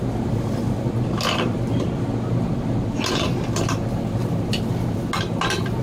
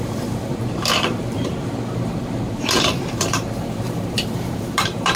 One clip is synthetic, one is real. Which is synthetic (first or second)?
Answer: second